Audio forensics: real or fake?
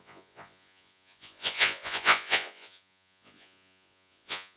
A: fake